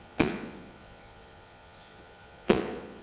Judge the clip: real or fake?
fake